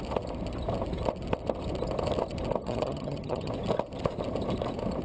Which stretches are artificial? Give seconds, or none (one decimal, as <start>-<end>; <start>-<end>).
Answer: 2.6-3.5